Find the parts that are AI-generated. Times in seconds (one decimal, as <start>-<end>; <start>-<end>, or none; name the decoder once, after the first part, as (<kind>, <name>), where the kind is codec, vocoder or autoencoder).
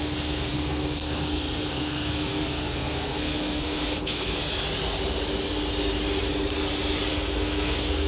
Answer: 0.0-4.5 (codec, SNAC); 7.1-8.1